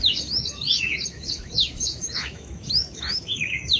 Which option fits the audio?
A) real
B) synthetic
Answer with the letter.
B